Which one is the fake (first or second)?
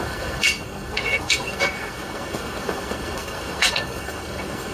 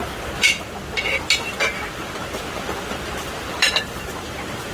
first